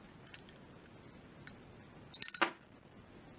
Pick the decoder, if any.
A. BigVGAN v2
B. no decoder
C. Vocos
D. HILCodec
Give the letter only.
B